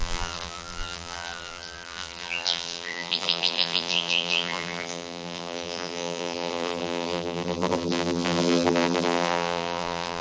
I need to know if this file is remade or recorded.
remade